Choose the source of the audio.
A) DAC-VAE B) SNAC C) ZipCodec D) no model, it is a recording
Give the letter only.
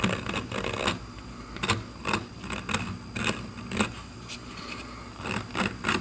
D